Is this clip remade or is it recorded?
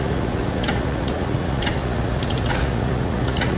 remade